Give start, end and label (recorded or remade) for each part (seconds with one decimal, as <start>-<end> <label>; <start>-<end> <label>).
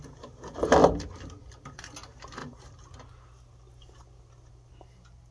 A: 0.0-2.4 recorded; 2.4-2.9 remade; 2.9-5.3 recorded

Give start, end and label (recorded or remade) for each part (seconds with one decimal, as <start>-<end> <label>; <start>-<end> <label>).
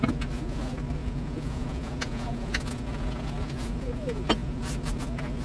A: 0.0-1.0 recorded; 1.0-2.5 remade; 2.5-5.4 recorded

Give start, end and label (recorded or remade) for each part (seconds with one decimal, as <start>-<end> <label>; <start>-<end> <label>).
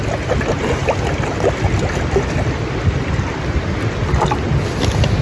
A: 0.0-5.2 recorded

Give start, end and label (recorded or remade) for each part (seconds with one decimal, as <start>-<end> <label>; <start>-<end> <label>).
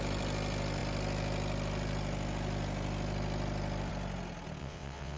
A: 0.0-4.6 recorded; 4.6-5.2 remade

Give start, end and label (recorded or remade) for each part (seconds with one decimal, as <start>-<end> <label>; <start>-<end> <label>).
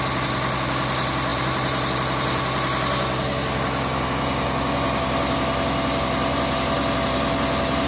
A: 0.0-7.9 recorded